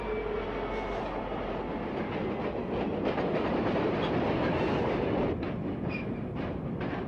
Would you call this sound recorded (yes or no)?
yes